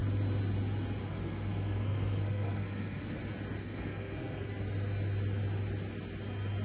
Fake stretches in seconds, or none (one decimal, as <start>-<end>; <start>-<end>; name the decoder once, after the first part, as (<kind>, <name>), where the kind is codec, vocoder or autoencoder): 1.0-3.2 (codec, SNAC); 3.6-4.5